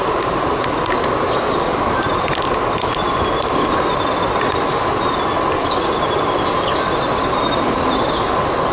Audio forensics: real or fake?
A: real